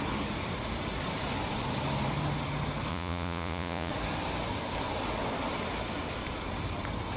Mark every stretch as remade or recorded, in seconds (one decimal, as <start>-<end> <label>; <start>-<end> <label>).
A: 0.0-2.9 recorded; 2.9-3.9 remade; 3.9-7.2 recorded